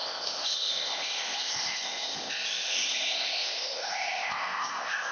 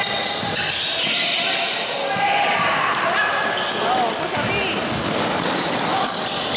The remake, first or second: first